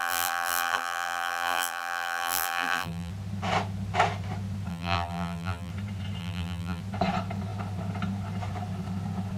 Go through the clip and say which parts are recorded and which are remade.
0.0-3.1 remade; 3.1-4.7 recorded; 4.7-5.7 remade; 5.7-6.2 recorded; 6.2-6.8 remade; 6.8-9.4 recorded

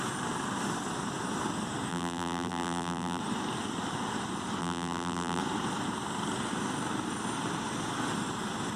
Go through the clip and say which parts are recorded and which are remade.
0.0-1.9 recorded; 1.9-3.2 remade; 3.2-4.6 recorded; 4.6-5.4 remade; 5.4-8.8 recorded

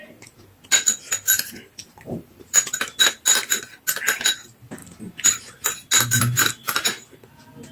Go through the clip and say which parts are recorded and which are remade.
0.0-1.8 recorded; 1.8-2.8 remade; 2.8-7.7 recorded

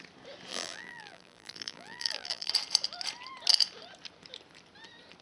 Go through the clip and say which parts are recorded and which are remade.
0.0-0.5 recorded; 0.5-2.5 remade; 2.5-5.2 recorded

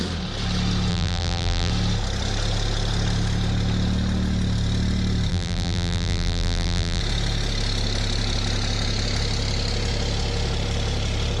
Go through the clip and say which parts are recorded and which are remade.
0.0-0.9 recorded; 0.9-1.7 remade; 1.7-5.3 recorded; 5.3-7.0 remade; 7.0-11.4 recorded

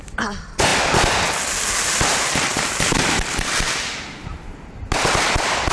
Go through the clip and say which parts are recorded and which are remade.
0.0-2.5 recorded; 2.5-4.6 remade; 4.6-5.7 recorded

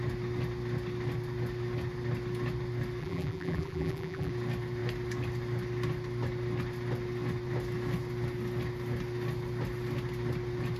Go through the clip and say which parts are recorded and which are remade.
0.0-3.0 recorded; 3.0-4.3 remade; 4.3-10.8 recorded